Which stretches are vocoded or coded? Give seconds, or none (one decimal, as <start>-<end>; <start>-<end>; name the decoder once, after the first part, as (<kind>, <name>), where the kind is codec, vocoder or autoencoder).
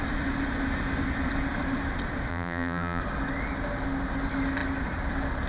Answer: 2.3-3.0 (vocoder, BigVGAN v2)